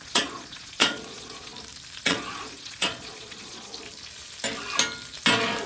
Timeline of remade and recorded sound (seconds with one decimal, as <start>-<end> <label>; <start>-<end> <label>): 0.0-1.5 remade; 1.5-2.0 recorded; 2.0-3.7 remade; 3.7-5.7 recorded